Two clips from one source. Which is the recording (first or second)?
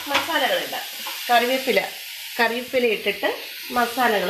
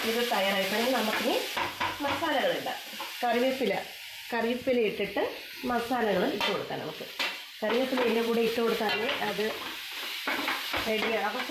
first